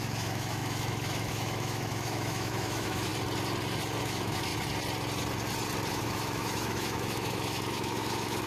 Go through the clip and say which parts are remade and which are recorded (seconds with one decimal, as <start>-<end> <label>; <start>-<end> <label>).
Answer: 0.0-3.1 remade; 3.1-4.0 recorded; 4.0-4.5 remade; 4.5-6.0 recorded; 6.0-8.5 remade